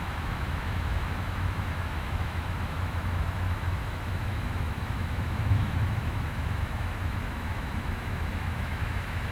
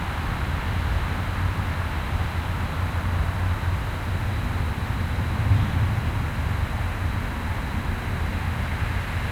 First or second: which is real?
second